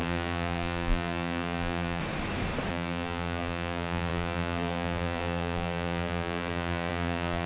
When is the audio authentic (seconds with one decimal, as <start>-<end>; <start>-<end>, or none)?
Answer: 2.0-2.7